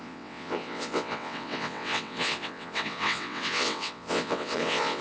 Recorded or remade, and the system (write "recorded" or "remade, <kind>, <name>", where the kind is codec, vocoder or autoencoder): remade, vocoder, WaveNeXt